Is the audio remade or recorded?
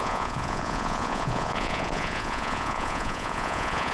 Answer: remade